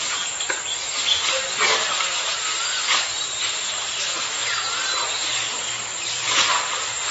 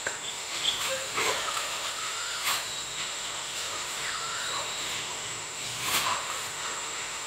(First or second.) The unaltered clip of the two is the first